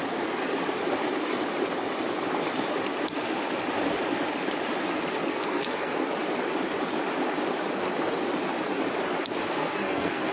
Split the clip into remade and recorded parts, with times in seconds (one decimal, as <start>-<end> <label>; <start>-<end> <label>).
0.0-5.3 recorded; 5.3-6.1 remade; 6.1-9.6 recorded; 9.6-10.3 remade